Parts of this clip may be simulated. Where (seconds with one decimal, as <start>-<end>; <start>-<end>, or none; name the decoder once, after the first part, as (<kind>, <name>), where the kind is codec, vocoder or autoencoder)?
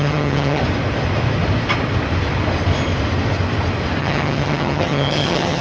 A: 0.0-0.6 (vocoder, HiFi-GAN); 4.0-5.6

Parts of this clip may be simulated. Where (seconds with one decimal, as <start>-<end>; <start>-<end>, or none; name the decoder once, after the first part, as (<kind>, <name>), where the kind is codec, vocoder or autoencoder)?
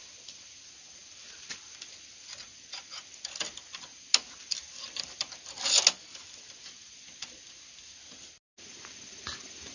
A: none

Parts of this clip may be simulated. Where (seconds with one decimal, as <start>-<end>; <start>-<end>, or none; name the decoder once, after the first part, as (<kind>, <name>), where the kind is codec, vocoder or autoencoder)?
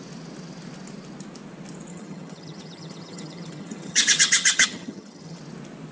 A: 1.9-5.4 (vocoder, HiFi-GAN)